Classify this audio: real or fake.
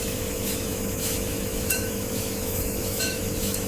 fake